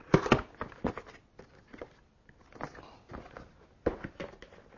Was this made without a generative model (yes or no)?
yes